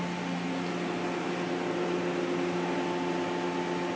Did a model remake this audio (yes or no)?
no